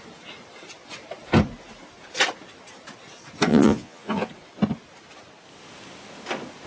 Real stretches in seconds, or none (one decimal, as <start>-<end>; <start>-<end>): 0.0-3.5; 4.3-6.7